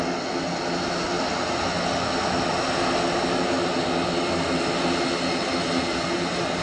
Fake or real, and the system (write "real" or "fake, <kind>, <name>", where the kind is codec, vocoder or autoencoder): real